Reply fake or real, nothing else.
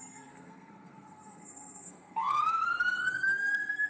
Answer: fake